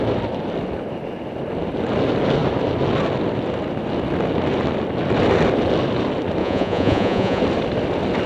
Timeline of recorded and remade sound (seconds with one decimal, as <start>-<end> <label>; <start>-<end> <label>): 0.0-6.4 recorded; 6.4-7.4 remade; 7.4-8.3 recorded

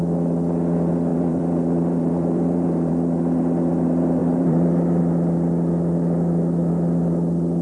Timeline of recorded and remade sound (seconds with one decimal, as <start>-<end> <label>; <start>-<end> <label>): 0.0-1.1 recorded; 1.1-2.9 remade; 2.9-4.2 recorded; 4.2-5.0 remade; 5.0-7.6 recorded

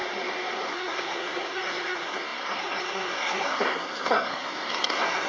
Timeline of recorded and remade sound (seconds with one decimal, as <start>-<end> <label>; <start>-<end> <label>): 0.0-0.7 recorded; 0.7-5.3 remade

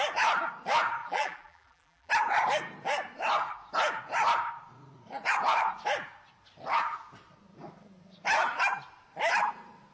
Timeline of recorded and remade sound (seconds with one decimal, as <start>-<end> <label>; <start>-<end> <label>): 0.0-1.0 recorded; 1.0-2.1 remade; 2.1-9.9 recorded

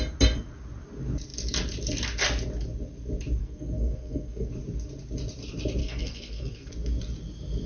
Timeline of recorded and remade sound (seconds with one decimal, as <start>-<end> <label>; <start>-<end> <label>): 0.0-3.4 recorded; 3.4-4.5 remade; 4.5-5.8 recorded; 5.8-6.7 remade; 6.7-7.7 recorded